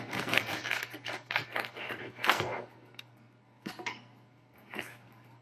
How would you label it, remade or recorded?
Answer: remade